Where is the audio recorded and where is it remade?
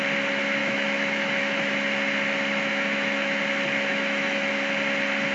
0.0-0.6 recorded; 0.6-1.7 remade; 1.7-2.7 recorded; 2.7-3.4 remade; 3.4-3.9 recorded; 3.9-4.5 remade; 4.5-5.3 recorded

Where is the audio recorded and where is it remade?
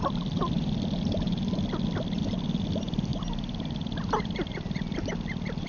0.0-5.7 recorded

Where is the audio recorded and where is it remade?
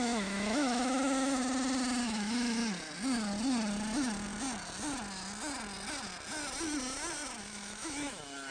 0.0-1.4 remade; 1.4-2.0 recorded; 2.0-2.6 remade; 2.6-7.4 recorded; 7.4-8.5 remade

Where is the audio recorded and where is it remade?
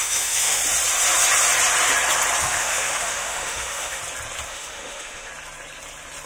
0.0-0.6 remade; 0.6-2.4 recorded; 2.4-4.0 remade; 4.0-4.5 recorded; 4.5-5.3 remade; 5.3-6.3 recorded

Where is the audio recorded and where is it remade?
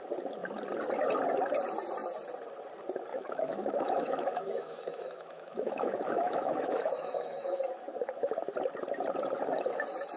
0.0-3.1 recorded; 3.1-7.6 remade; 7.6-10.2 recorded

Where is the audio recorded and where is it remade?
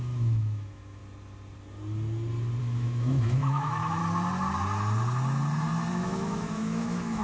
0.0-1.0 remade; 1.0-2.6 recorded; 2.6-4.0 remade; 4.0-5.9 recorded; 5.9-7.2 remade